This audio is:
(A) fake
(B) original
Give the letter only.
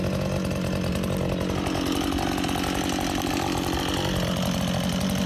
B